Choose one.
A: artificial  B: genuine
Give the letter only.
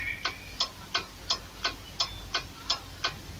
B